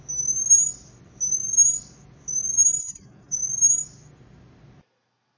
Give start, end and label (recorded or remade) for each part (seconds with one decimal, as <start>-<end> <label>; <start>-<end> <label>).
0.0-2.8 recorded; 2.8-3.5 remade; 3.5-5.4 recorded